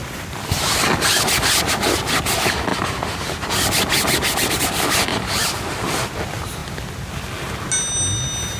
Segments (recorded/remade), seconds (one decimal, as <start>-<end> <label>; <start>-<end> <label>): 0.0-5.1 recorded; 5.1-6.1 remade; 6.1-8.6 recorded